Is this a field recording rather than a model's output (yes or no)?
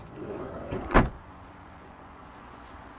no